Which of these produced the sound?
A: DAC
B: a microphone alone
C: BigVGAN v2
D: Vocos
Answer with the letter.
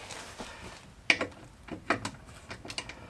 B